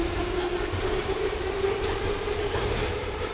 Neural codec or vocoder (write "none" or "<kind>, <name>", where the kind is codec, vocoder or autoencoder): vocoder, BigVGAN v2